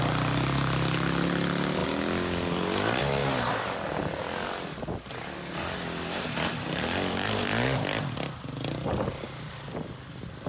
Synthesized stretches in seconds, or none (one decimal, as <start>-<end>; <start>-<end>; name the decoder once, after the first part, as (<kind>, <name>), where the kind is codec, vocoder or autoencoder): none